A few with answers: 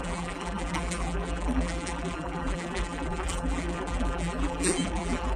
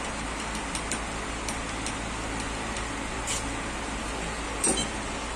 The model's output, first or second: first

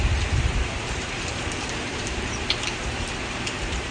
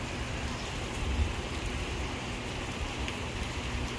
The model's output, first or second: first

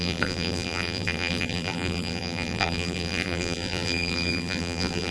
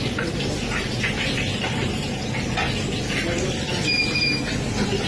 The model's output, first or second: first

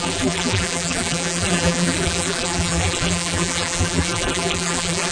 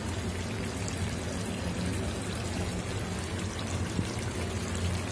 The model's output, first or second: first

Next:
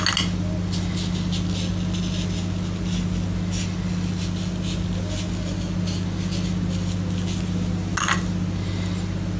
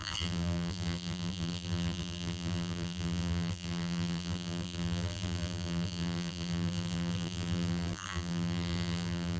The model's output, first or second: second